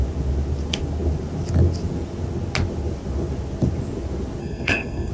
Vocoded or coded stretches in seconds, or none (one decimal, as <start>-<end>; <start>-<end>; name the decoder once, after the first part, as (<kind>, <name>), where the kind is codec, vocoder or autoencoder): 4.4-5.1 (codec, SNAC)